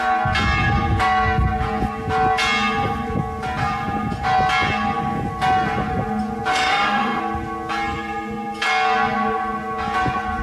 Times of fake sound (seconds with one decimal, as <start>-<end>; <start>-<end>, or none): 6.5-7.2